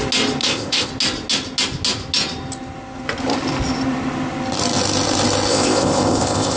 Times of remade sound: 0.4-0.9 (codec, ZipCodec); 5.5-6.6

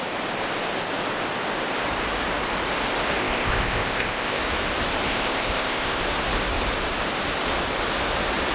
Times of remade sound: 3.2-4.4 (codec, ZipCodec); 5.1-6.0

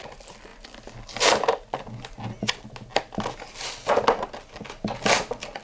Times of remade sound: none

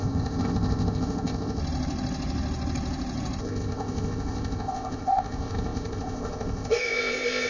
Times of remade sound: 0.0-1.6 (codec, ZipCodec); 3.4-7.5

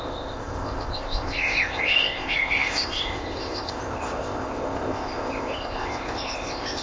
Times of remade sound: 0.0-6.8 (codec, ZipCodec)